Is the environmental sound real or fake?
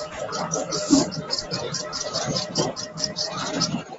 fake